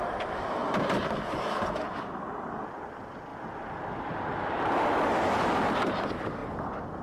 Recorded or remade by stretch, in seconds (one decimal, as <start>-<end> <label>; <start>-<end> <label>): 0.0-7.0 recorded